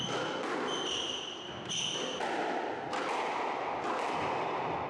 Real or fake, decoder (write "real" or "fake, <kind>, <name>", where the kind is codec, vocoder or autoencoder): real